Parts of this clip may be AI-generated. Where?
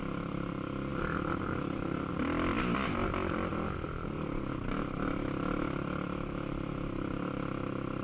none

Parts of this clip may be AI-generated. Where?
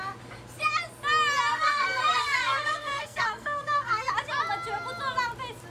1.5-4.1 (codec, SNAC)